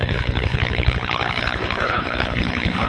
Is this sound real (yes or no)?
no